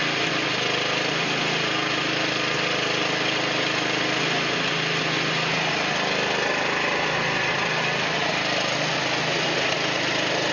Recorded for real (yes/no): yes